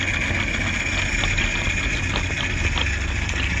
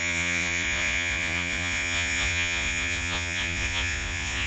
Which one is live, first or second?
first